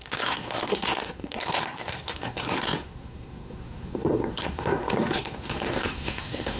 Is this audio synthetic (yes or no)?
yes